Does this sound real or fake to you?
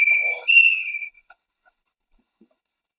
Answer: fake